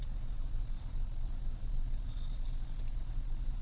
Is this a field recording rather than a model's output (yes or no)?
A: yes